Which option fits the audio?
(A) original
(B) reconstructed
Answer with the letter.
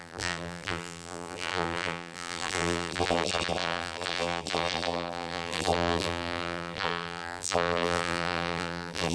B